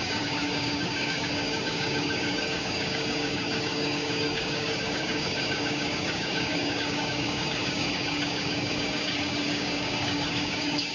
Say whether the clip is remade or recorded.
remade